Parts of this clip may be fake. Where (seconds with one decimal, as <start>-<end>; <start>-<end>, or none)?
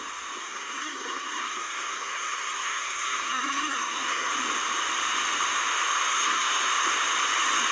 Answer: 0.4-4.3; 6.1-6.7